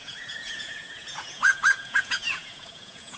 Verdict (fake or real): fake